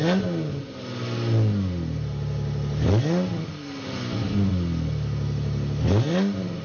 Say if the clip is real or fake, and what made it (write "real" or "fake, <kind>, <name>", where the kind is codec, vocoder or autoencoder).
real